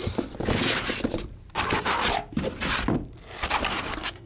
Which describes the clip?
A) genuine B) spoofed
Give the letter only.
A